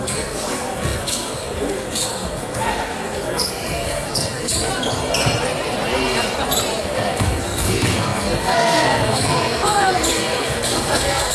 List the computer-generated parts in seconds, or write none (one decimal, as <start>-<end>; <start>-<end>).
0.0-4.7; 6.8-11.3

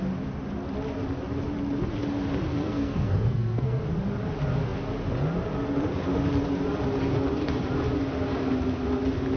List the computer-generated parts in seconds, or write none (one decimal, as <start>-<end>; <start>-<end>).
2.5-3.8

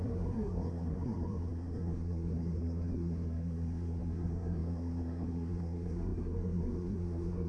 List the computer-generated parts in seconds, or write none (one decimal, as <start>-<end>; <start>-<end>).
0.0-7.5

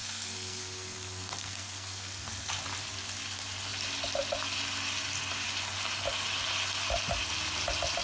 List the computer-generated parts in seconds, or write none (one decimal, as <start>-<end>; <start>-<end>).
0.0-2.6

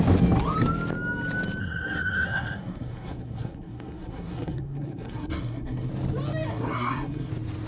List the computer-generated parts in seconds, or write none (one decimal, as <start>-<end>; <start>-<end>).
1.6-5.9; 6.5-7.3

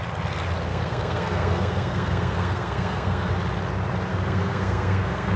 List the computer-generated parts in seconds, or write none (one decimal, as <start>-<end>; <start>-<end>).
0.7-3.3; 4.1-5.4

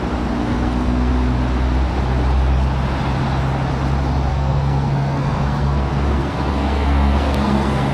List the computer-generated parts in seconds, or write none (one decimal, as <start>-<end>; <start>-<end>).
0.4-1.1; 4.3-7.9

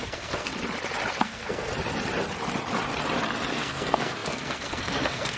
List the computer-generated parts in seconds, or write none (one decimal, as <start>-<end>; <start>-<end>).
0.0-0.5; 1.1-1.7; 3.5-5.4